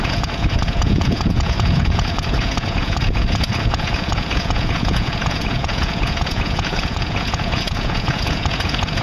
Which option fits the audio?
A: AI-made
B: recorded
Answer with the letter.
A